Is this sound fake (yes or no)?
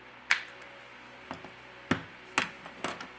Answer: no